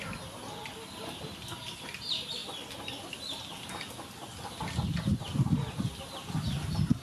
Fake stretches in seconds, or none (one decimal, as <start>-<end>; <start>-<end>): none